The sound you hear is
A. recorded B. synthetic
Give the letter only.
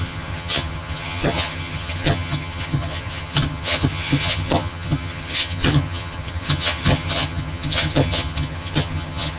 B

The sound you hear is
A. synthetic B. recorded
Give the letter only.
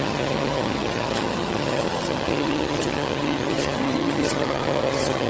A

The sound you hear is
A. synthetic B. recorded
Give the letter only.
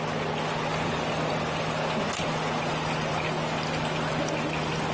B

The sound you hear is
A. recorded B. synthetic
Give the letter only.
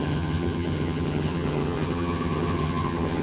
B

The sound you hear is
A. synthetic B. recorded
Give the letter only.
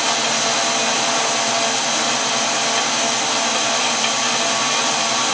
B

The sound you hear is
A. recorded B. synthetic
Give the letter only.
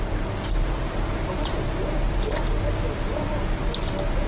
A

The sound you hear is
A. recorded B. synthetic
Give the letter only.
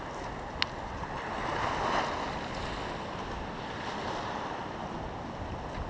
A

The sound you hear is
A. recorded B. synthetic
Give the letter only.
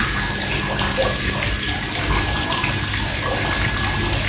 A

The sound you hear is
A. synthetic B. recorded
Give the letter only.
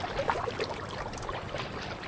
B